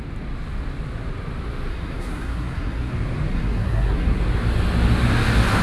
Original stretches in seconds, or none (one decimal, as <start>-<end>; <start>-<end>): 0.0-1.7; 2.9-3.3; 4.2-5.6

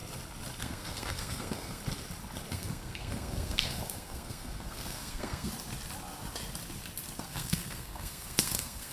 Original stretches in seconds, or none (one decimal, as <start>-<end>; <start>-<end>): 0.0-0.6; 1.8-2.5; 5.5-7.2

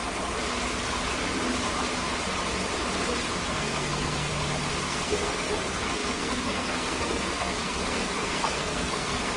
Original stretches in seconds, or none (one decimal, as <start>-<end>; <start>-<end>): 0.0-3.5; 4.3-4.8

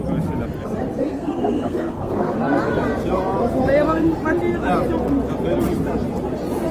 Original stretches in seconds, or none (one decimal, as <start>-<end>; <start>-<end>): 0.0-1.0; 2.4-6.7

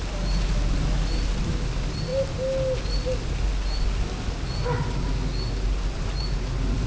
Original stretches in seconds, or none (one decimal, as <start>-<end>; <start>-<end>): 0.0-6.9